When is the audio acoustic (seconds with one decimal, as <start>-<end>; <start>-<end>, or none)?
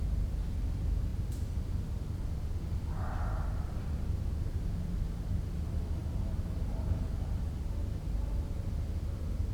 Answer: 0.0-9.5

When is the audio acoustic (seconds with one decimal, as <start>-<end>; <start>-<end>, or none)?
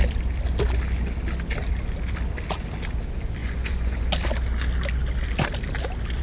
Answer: 0.0-3.4; 4.1-6.2